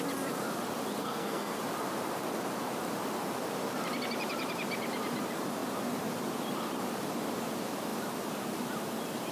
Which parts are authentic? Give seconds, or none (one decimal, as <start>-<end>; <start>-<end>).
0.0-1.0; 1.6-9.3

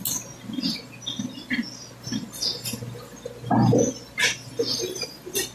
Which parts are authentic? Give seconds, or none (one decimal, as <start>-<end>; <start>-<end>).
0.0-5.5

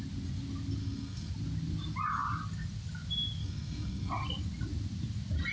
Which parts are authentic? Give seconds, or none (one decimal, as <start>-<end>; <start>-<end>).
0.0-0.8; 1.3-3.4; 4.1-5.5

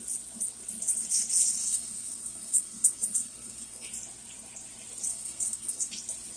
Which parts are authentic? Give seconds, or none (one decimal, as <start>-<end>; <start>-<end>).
0.0-1.6; 3.9-5.1; 5.9-6.4

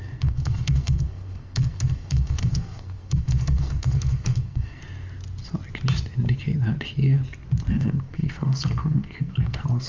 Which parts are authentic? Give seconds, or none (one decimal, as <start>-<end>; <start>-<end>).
4.8-7.7

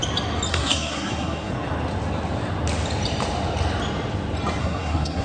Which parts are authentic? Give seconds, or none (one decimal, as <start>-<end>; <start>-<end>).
0.0-0.5; 1.5-4.6